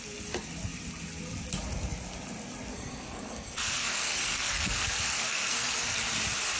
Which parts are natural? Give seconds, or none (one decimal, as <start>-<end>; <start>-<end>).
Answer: 0.0-2.7; 6.0-6.6

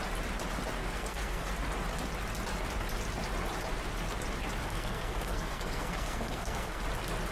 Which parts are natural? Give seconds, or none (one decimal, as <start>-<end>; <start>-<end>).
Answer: 0.0-0.8; 1.5-4.6; 6.8-7.3